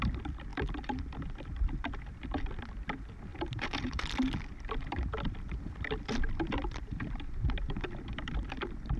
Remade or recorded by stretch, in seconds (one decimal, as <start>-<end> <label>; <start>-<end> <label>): 0.0-0.5 recorded; 0.5-2.5 remade; 2.5-3.3 recorded; 3.3-8.6 remade; 8.6-9.0 recorded